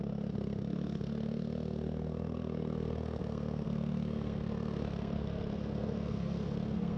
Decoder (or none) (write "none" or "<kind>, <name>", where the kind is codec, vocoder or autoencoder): codec, SNAC